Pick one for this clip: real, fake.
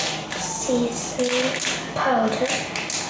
real